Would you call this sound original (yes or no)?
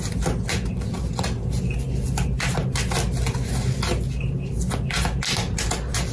yes